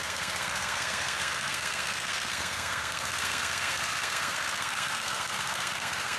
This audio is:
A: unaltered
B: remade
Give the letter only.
B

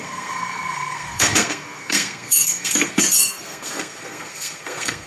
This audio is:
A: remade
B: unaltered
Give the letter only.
A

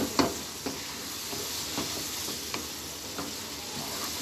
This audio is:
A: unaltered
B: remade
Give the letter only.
A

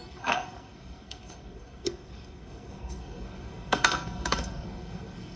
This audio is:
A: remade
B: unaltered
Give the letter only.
A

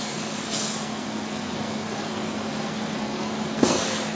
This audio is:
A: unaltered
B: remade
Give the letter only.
B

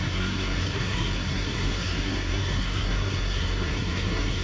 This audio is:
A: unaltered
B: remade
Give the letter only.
B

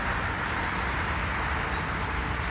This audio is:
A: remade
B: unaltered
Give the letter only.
B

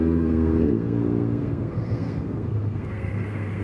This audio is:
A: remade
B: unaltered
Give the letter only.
A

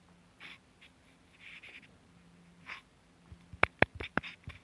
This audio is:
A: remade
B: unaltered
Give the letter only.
B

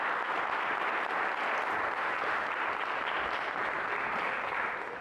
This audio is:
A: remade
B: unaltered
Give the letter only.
B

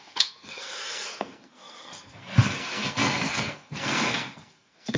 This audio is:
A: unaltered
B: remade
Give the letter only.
B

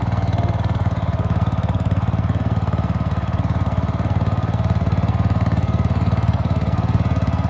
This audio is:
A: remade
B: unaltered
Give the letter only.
A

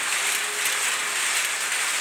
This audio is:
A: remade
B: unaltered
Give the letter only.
B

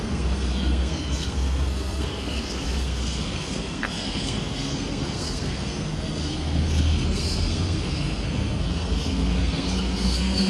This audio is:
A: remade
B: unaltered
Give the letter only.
A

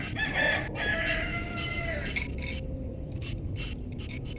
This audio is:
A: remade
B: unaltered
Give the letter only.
B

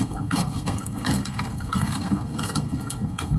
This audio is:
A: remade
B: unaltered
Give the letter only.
A